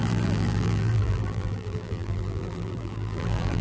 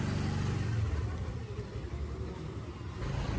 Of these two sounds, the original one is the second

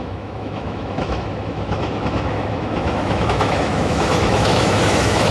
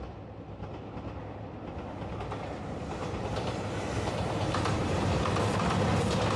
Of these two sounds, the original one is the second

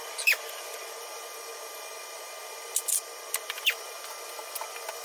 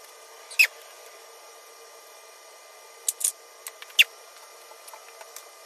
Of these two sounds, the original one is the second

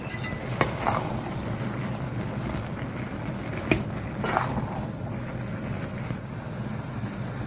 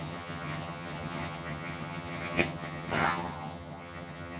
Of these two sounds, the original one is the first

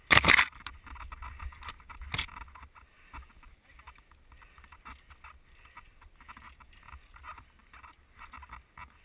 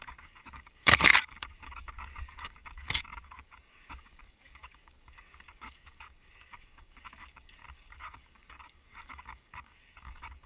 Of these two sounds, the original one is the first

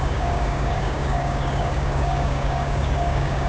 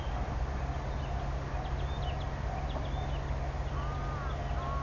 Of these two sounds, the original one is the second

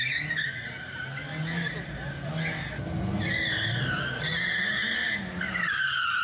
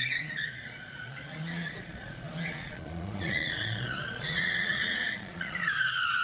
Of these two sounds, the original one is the first